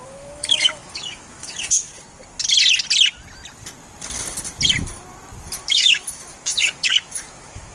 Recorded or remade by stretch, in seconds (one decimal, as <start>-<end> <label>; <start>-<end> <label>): 0.0-1.9 remade; 1.9-5.6 recorded; 5.6-7.7 remade

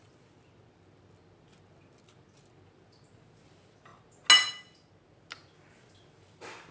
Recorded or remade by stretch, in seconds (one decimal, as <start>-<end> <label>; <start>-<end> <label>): 0.0-6.7 recorded

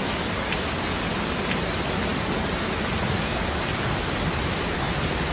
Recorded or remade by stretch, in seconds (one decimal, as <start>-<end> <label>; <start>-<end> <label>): 0.0-5.3 recorded

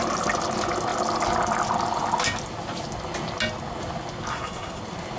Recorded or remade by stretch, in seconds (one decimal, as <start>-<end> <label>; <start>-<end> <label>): 0.0-4.3 recorded; 4.3-4.8 remade; 4.8-5.2 recorded

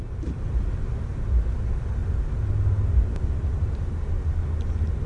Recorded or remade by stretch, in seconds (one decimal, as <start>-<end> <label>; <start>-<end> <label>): 0.0-5.1 recorded

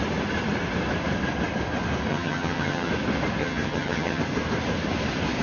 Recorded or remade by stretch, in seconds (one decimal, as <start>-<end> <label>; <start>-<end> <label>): 0.0-2.1 recorded; 2.1-2.9 remade; 2.9-3.4 recorded; 3.4-4.2 remade; 4.2-5.4 recorded

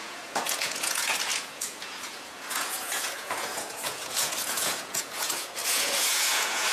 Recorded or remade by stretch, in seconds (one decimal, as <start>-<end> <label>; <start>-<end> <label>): 0.0-6.7 remade

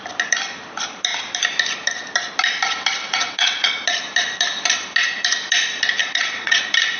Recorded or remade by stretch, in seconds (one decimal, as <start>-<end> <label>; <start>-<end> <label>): 0.0-3.0 recorded; 3.0-3.7 remade; 3.7-6.0 recorded; 6.0-6.6 remade; 6.6-7.0 recorded